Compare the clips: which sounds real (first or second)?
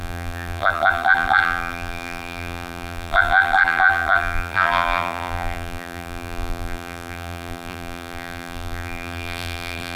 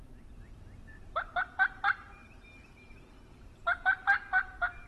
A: second